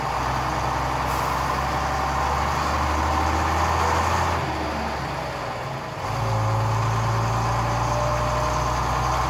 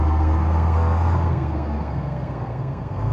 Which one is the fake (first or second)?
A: second